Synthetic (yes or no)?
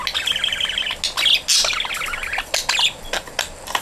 no